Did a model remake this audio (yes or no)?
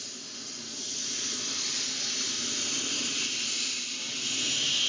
no